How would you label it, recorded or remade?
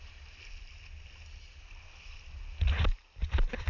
recorded